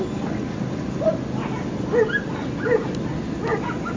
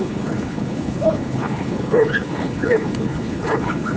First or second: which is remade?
second